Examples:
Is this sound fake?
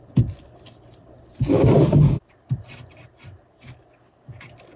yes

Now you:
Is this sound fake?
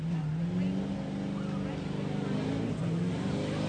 no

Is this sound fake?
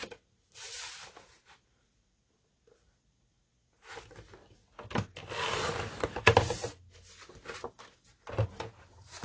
no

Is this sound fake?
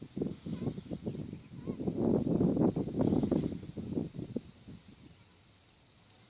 no